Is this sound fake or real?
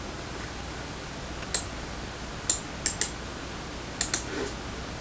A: real